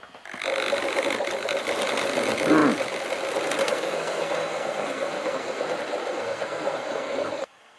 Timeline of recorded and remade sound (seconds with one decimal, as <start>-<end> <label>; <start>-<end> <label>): 0.0-3.6 recorded; 3.6-5.6 remade; 5.6-6.0 recorded; 6.0-7.8 remade

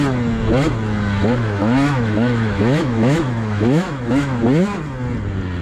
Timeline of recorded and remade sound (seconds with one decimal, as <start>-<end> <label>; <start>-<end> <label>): 0.0-1.2 recorded; 1.2-4.4 remade; 4.4-5.6 recorded